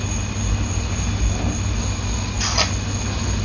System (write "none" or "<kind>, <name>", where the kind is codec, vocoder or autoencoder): none